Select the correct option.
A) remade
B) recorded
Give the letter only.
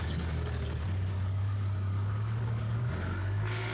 A